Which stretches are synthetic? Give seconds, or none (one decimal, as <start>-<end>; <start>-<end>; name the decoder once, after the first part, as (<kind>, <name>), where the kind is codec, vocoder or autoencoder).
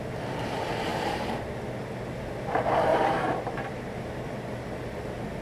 0.9-1.6 (vocoder, BigVGAN v2); 2.9-4.3